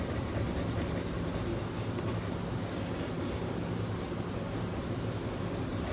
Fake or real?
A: real